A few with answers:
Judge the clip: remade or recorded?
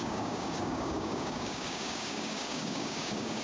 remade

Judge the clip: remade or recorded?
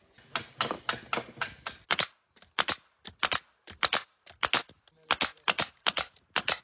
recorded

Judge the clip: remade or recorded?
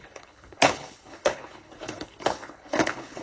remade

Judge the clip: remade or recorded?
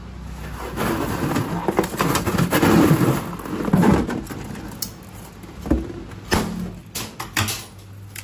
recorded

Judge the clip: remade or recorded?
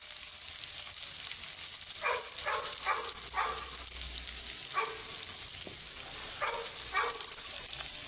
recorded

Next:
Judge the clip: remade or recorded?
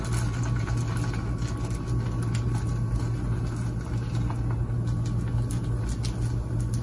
recorded